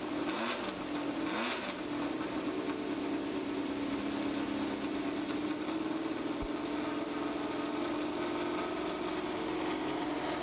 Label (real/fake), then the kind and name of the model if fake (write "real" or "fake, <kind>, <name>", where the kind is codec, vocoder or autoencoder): real